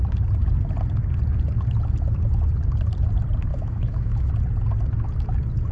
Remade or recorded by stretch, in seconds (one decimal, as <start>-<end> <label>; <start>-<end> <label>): 0.0-3.5 recorded; 3.5-4.3 remade; 4.3-5.7 recorded